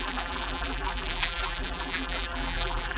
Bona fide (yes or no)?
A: no